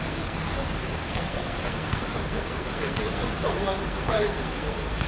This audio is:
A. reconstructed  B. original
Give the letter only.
A